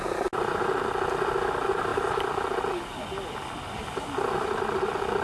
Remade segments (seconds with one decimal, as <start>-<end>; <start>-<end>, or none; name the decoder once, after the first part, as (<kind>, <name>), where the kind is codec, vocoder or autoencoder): none